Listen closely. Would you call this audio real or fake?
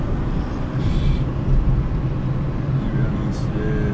real